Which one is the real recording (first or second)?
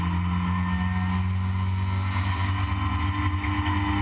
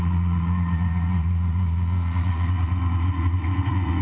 first